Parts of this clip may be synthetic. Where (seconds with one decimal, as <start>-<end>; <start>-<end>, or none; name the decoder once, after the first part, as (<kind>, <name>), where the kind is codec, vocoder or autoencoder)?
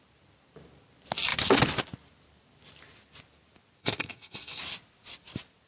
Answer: 3.8-4.6 (codec, SNAC)